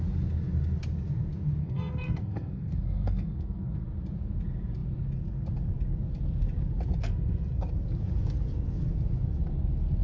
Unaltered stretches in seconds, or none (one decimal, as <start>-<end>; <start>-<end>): 0.0-1.6; 3.8-10.0